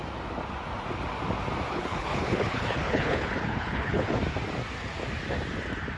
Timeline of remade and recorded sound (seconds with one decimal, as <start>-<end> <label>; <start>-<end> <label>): 0.0-1.7 recorded; 1.7-4.2 remade; 4.2-6.0 recorded